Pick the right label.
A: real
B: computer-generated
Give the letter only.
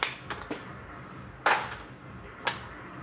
A